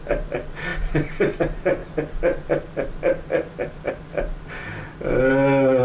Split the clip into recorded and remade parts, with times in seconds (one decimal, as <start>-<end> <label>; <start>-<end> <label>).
0.0-5.8 recorded